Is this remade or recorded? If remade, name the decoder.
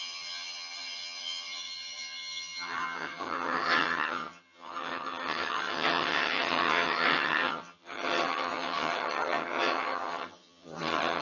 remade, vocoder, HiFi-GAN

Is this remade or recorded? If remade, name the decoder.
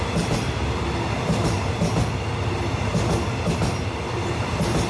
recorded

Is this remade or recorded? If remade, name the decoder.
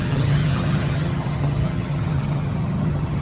remade, vocoder, HiFi-GAN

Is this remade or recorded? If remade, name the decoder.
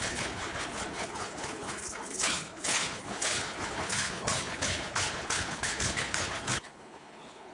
remade, codec, HILCodec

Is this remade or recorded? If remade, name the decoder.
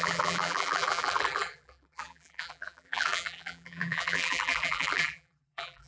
remade, vocoder, BigVGAN v2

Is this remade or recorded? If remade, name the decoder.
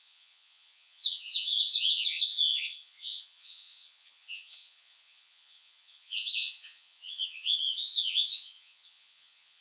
remade, vocoder, Vocos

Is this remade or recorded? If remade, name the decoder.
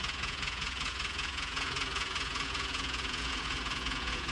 remade, vocoder, Vocos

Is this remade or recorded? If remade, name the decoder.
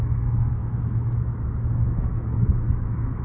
remade, autoencoder, DAC-VAE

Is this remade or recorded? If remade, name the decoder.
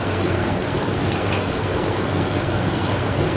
remade, codec, SNAC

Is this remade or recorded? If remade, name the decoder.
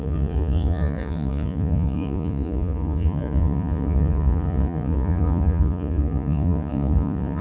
remade, vocoder, Vocos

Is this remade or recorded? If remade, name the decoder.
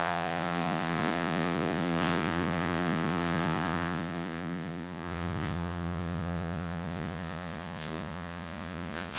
remade, vocoder, Vocos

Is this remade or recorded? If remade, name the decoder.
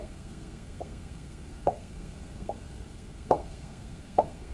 remade, codec, SNAC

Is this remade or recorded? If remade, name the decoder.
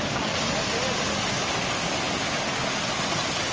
recorded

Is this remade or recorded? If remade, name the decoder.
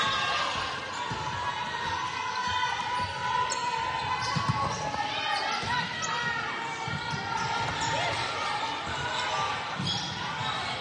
recorded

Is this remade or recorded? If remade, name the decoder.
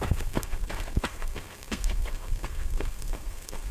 remade, codec, SNAC